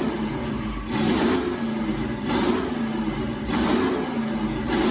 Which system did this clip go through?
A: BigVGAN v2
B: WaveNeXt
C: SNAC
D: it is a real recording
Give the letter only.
D